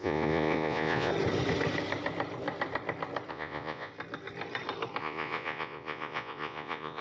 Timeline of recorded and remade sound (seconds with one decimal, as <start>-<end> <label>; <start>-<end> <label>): 0.0-1.1 remade; 1.1-3.3 recorded; 3.3-3.9 remade; 3.9-5.0 recorded; 5.0-7.0 remade